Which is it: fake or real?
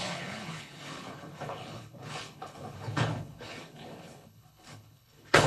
fake